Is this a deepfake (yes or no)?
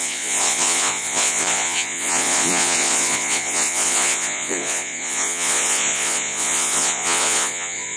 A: yes